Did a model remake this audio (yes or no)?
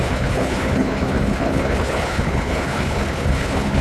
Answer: yes